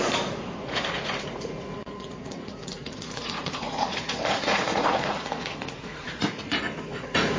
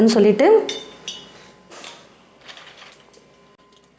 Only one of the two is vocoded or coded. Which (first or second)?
first